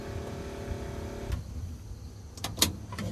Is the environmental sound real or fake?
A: real